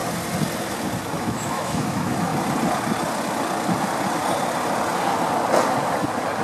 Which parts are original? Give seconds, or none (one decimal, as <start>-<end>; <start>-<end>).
0.0-1.1; 2.3-6.4